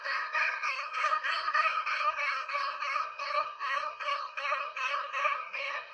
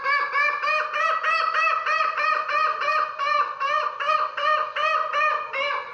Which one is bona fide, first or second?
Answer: second